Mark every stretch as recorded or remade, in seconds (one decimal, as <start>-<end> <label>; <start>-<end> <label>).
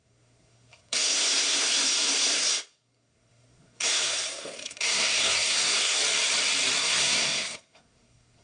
0.0-6.0 remade; 6.0-6.8 recorded; 6.8-8.4 remade